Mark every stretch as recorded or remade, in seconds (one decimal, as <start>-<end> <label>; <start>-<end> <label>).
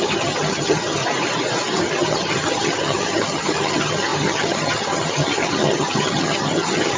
0.0-1.0 remade; 1.0-1.8 recorded; 1.8-7.0 remade